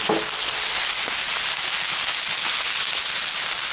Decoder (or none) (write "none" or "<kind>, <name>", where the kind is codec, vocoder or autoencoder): none